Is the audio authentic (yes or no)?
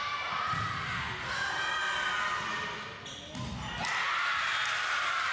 yes